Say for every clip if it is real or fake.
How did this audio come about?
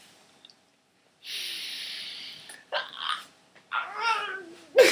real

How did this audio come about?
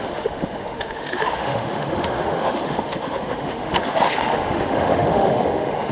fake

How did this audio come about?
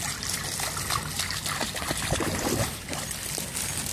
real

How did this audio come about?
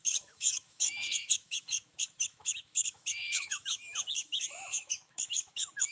fake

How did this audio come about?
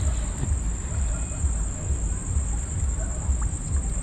real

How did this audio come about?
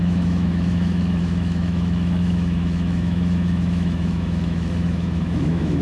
fake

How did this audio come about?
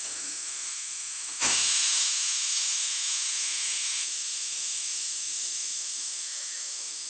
fake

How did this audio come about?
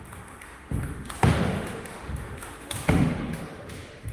fake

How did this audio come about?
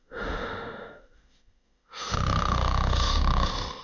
fake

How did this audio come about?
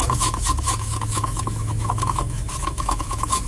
fake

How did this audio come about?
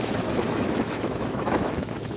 fake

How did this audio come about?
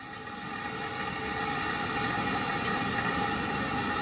real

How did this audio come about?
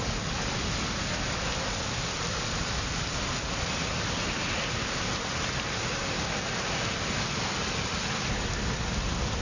real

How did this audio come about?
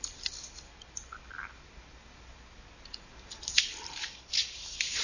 real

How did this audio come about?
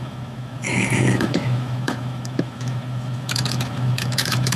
fake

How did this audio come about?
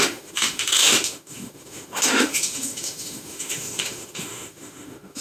fake